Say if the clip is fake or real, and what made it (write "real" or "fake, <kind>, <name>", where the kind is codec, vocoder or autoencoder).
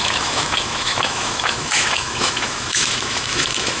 fake, autoencoder, DAC-VAE